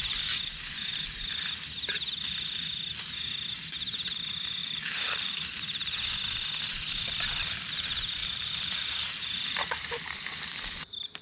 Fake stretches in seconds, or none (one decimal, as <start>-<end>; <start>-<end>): 4.6-5.3; 8.2-10.0

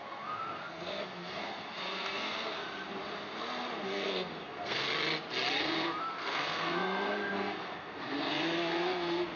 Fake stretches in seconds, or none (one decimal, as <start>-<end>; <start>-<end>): 0.0-2.6; 3.8-4.9; 5.6-9.4

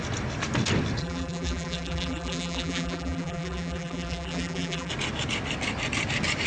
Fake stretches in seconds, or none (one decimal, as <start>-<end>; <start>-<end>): 1.0-4.9

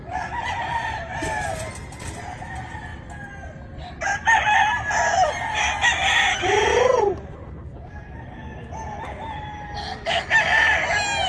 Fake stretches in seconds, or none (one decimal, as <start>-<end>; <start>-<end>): none